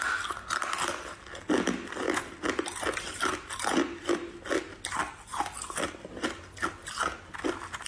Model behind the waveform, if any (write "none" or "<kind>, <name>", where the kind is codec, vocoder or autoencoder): none